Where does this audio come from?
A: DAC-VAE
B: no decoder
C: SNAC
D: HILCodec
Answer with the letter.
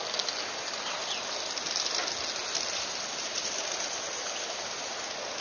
B